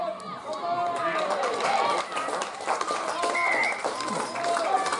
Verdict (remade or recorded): recorded